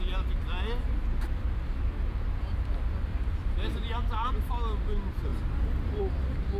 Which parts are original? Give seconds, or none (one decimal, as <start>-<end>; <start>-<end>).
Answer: 0.0-3.1; 3.7-5.3; 6.0-6.6